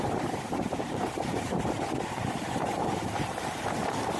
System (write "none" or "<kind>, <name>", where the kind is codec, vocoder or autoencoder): vocoder, BigVGAN v2